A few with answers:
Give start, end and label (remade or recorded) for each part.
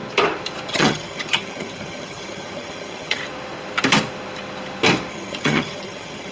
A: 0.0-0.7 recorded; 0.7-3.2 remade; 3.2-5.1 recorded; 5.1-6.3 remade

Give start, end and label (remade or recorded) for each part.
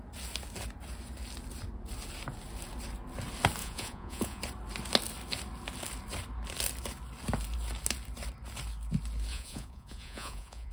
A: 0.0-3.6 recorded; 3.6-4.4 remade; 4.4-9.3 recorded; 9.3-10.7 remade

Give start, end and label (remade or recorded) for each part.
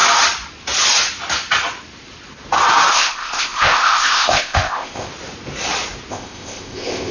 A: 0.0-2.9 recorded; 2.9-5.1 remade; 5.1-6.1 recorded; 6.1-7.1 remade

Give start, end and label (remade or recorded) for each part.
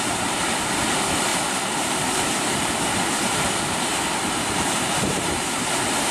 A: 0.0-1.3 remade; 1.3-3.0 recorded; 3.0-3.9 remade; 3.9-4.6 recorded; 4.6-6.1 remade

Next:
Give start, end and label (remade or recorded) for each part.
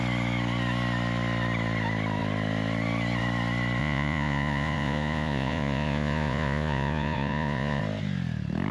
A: 0.0-3.8 recorded; 3.8-7.8 remade; 7.8-8.7 recorded